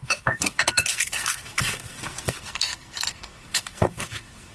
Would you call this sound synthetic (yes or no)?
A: yes